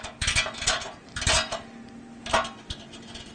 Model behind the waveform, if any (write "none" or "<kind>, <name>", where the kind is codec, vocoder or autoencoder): none